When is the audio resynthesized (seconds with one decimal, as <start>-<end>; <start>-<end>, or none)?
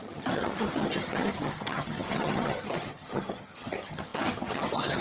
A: 0.0-5.0